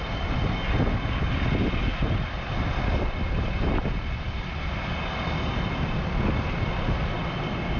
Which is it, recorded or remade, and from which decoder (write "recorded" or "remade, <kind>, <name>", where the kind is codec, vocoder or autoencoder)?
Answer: recorded